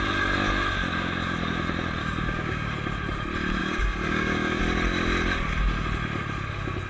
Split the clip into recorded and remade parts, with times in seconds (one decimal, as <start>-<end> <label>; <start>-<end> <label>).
0.0-2.0 recorded; 2.0-2.7 remade; 2.7-3.6 recorded; 3.6-4.6 remade; 4.6-6.9 recorded